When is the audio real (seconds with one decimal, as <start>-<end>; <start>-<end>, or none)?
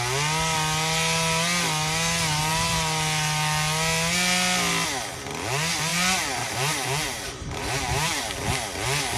0.0-5.9; 8.2-9.2